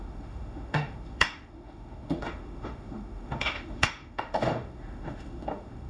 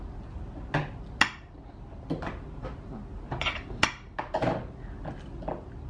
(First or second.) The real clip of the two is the second